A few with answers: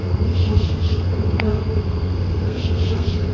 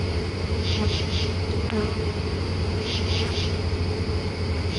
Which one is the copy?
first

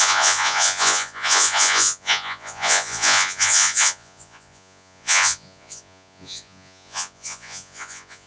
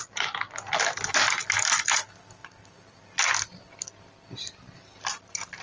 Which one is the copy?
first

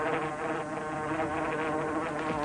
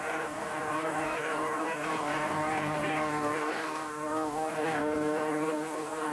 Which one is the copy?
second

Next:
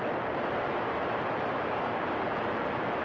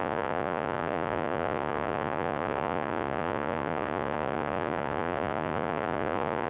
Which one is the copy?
second